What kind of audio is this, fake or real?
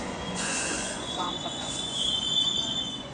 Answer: fake